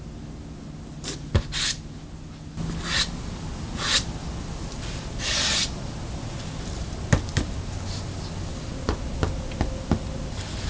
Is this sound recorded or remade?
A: recorded